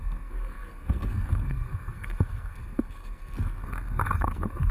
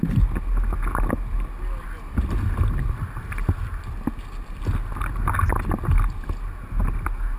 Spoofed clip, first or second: first